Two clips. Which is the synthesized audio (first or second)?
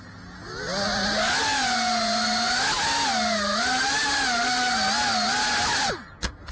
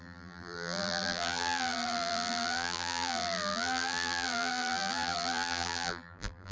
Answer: second